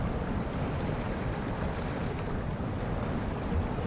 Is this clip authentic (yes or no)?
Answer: no